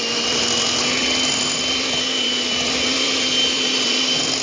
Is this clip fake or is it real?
fake